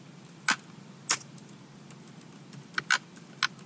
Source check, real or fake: real